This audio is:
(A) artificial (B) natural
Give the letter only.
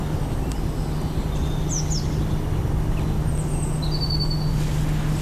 B